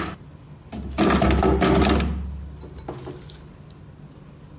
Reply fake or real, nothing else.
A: real